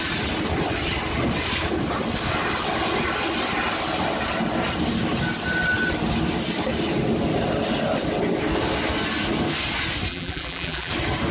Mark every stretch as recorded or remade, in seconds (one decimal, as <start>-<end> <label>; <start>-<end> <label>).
0.0-10.1 recorded; 10.1-10.9 remade; 10.9-11.3 recorded